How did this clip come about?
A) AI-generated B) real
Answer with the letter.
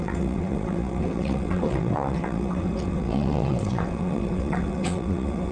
A